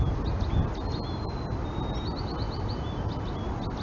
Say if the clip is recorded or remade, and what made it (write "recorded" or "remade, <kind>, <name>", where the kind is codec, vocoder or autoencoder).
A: recorded